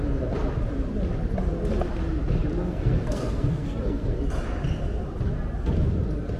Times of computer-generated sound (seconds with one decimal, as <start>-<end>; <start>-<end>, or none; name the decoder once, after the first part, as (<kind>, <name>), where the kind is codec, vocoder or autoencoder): 2.6-4.2 (codec, SNAC)